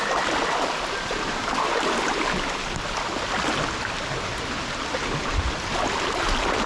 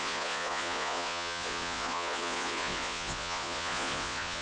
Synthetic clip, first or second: second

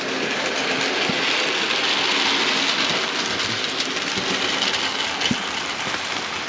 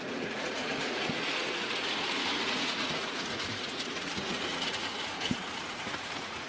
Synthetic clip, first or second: second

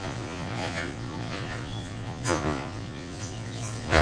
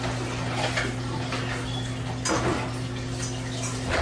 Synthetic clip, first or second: first